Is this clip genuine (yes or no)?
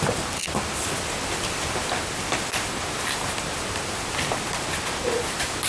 yes